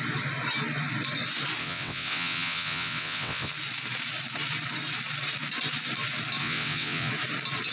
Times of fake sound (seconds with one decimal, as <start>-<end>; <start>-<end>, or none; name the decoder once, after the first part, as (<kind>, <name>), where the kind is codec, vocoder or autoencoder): 1.6-3.5 (vocoder, WaveNeXt); 6.4-7.1